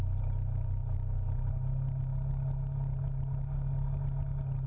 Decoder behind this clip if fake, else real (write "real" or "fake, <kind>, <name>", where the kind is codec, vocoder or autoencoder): real